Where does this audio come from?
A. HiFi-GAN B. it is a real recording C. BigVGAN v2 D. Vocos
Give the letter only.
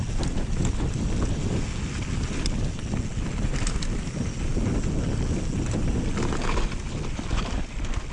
B